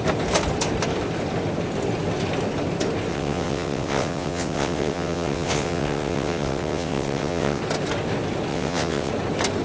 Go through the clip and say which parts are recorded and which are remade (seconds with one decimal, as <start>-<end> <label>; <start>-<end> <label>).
0.0-3.1 recorded; 3.1-7.6 remade; 7.6-8.5 recorded; 8.5-9.1 remade; 9.1-9.6 recorded